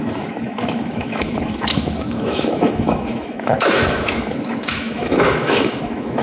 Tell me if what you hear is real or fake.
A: fake